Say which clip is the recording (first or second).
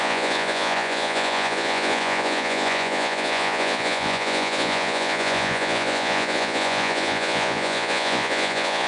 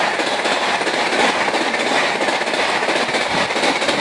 second